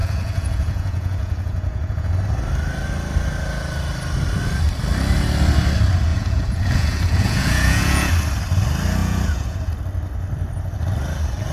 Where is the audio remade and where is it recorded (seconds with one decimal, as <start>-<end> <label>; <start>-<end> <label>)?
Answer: 0.0-2.1 remade; 2.1-6.1 recorded; 6.1-8.1 remade; 8.1-9.0 recorded; 9.0-9.7 remade; 9.7-11.5 recorded